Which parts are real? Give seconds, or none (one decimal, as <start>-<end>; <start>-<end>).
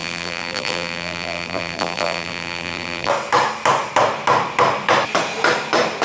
3.1-6.0